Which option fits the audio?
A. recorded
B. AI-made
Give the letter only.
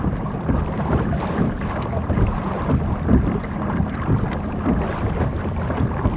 B